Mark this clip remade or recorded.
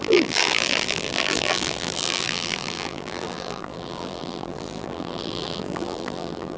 remade